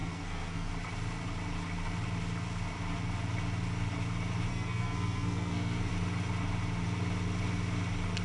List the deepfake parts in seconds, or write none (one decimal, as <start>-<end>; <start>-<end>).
0.0-0.7; 4.5-5.9